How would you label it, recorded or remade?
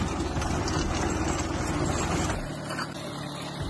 recorded